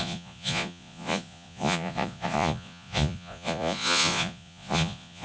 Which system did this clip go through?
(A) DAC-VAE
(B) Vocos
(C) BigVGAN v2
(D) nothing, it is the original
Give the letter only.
B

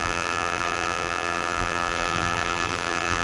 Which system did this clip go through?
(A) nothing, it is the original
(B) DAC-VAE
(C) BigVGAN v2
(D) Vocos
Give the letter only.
C